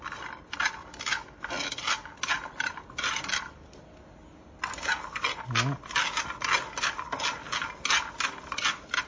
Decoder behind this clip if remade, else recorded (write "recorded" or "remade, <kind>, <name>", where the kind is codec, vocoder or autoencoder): recorded